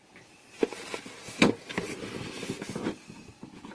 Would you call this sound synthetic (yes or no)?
no